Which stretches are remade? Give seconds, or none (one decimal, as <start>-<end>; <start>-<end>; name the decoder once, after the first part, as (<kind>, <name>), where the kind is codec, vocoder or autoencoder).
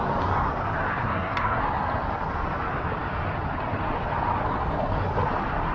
1.0-1.6 (codec, SNAC)